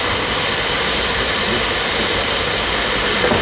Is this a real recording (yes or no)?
yes